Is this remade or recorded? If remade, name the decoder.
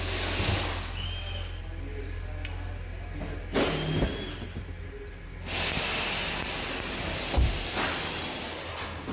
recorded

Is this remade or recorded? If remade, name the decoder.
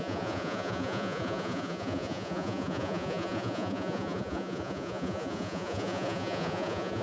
remade, vocoder, Vocos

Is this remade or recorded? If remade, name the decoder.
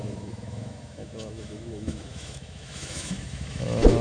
remade, autoencoder, DAC-VAE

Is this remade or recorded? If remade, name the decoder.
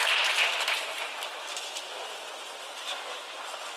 recorded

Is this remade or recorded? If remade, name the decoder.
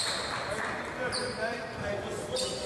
recorded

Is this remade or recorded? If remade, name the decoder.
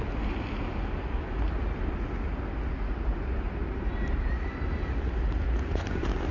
recorded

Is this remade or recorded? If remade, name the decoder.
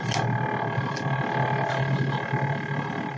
recorded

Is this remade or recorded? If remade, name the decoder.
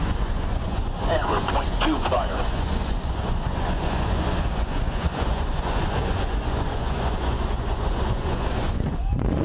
remade, vocoder, Vocos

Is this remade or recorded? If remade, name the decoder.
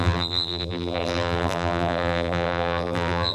remade, vocoder, BigVGAN v2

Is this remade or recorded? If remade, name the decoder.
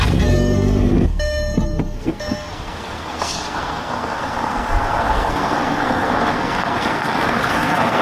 remade, codec, SNAC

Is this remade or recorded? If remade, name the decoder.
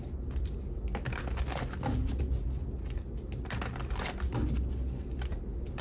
recorded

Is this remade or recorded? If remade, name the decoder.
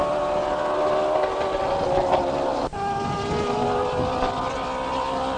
recorded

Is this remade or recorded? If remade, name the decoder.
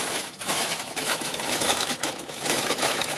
remade, autoencoder, DAC-VAE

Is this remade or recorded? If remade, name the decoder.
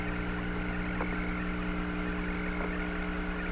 recorded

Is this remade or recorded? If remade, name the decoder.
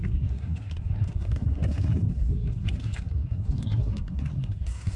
remade, codec, SNAC